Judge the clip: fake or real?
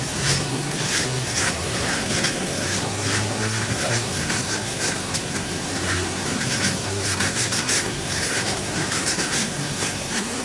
fake